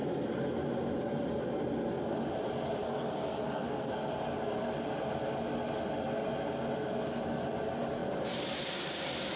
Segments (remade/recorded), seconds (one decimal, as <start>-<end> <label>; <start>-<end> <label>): 0.0-2.8 recorded; 2.8-3.9 remade; 3.9-9.4 recorded